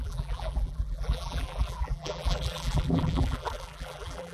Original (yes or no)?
no